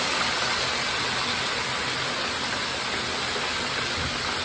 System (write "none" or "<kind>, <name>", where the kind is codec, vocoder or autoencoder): none